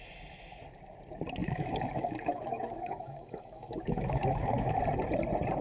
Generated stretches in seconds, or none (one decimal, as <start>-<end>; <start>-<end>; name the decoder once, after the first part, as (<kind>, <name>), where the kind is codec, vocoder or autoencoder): 1.4-4.8 (autoencoder, DAC-VAE)